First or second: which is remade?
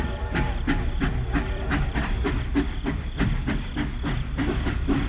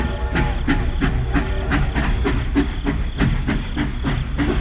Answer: first